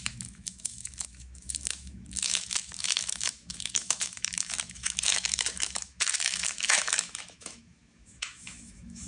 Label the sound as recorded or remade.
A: remade